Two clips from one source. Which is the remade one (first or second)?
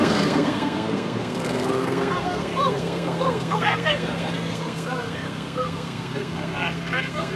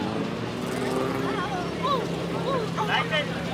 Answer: first